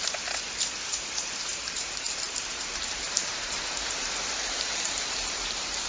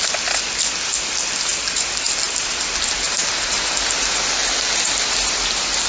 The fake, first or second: first